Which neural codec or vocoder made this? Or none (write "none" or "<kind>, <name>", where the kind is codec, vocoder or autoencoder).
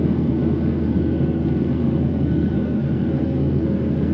codec, SNAC